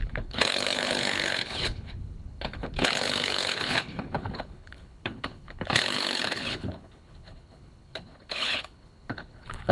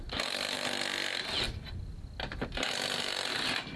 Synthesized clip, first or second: first